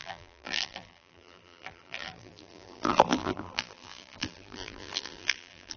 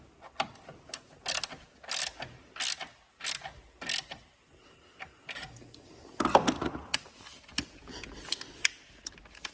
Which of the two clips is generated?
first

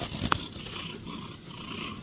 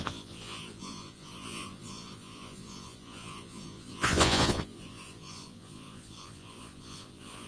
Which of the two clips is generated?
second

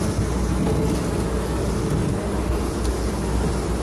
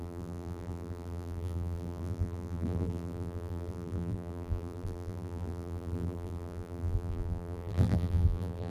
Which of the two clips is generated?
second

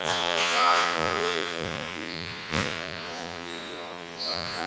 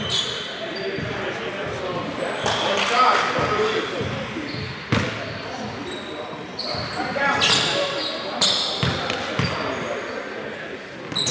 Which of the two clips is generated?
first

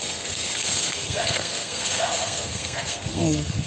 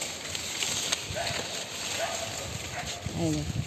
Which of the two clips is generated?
first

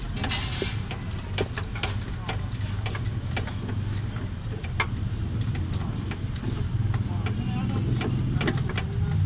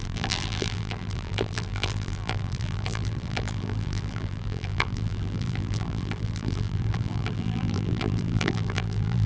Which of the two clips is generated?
second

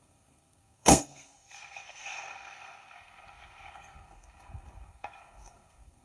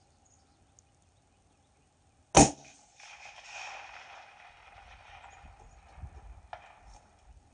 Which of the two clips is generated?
first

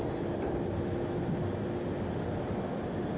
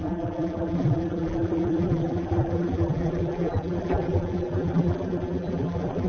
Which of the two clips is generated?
second